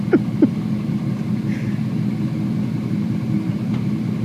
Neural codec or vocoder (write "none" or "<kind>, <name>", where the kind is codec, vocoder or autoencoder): none